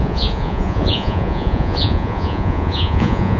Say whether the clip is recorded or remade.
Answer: remade